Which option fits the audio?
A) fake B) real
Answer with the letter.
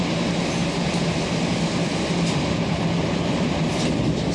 B